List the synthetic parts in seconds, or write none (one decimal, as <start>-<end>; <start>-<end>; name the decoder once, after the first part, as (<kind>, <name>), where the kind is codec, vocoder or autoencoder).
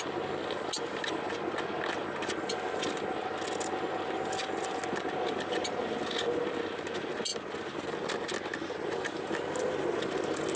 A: none